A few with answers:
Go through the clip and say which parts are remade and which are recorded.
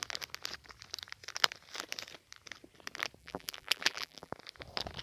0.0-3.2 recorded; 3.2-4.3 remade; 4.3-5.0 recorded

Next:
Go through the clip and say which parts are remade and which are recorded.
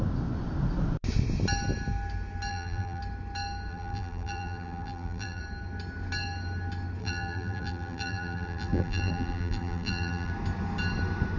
0.0-2.5 recorded; 2.5-3.0 remade; 3.0-3.7 recorded; 3.7-5.4 remade; 5.4-7.0 recorded; 7.0-10.3 remade; 10.3-11.4 recorded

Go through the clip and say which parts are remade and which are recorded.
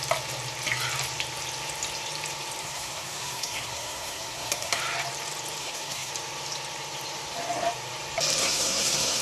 0.0-2.6 recorded; 2.6-4.8 remade; 4.8-5.6 recorded; 5.6-6.1 remade; 6.1-8.4 recorded; 8.4-9.2 remade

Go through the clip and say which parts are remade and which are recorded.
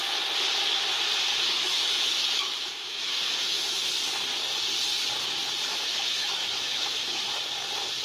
0.0-1.3 recorded; 1.3-3.9 remade; 3.9-5.7 recorded; 5.7-7.2 remade; 7.2-8.0 recorded